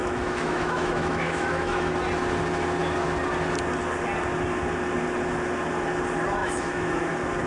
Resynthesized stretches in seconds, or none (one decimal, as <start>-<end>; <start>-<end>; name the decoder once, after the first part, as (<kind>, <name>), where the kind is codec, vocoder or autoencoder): 0.0-1.9 (autoencoder, DAC-VAE); 6.4-7.1

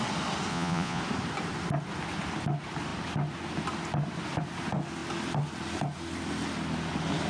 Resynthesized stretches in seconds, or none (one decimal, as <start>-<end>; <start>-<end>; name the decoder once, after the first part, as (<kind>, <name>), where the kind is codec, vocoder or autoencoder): 0.5-1.0 (vocoder, Vocos)

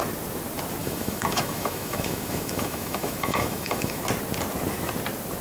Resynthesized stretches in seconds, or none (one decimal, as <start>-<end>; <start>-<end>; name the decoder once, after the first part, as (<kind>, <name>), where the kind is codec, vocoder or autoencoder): 0.8-4.0 (autoencoder, DAC-VAE)

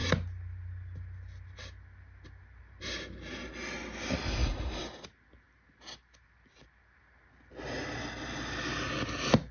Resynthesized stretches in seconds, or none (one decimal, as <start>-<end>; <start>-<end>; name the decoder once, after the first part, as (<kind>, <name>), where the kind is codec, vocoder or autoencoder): none

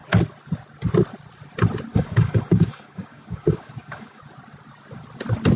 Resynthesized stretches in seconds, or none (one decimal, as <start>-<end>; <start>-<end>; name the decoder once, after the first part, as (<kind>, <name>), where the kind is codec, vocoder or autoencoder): 1.9-4.2 (codec, DAC)

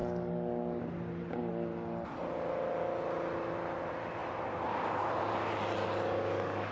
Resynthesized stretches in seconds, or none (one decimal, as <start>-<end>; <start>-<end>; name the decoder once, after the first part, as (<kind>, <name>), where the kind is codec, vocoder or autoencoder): 0.0-0.8 (codec, DAC); 5.8-6.7

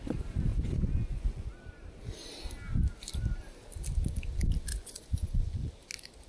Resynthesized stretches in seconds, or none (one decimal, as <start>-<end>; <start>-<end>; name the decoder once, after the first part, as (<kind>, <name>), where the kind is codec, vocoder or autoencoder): 0.5-1.5 (vocoder, Vocos); 4.7-5.7